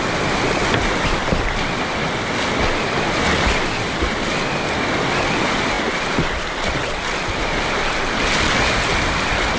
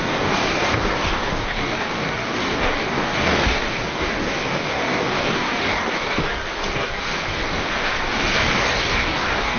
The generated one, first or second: second